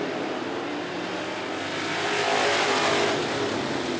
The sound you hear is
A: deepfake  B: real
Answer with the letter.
B